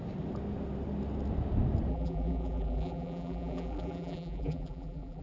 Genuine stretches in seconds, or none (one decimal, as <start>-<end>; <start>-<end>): 0.0-1.9